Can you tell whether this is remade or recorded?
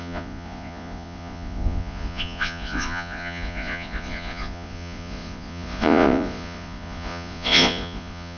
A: remade